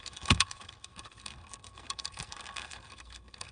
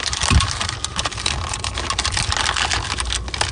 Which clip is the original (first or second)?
second